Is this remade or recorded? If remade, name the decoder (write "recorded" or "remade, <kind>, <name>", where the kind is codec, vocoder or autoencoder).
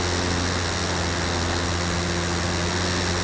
recorded